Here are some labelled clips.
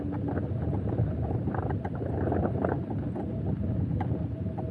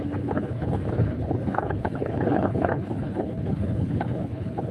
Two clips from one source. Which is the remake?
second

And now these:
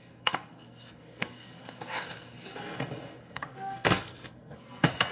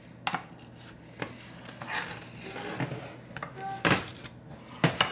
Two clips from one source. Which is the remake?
first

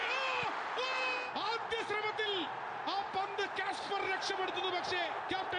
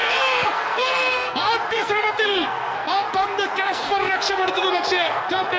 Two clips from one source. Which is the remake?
second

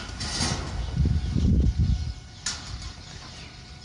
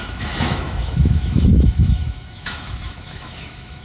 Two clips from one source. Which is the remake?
second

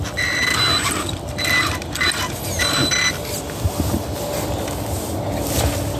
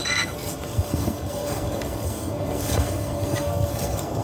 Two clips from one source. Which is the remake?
second